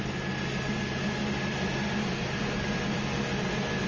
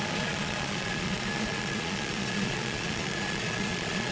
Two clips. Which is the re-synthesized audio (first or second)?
second